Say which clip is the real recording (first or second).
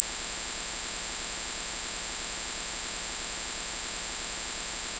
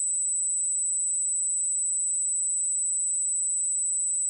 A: second